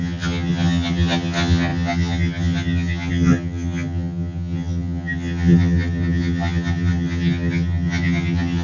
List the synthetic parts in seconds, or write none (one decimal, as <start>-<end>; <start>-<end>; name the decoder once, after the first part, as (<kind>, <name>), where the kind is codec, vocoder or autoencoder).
0.0-8.6 (vocoder, HiFi-GAN)